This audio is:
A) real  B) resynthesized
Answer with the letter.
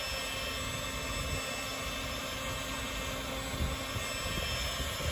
A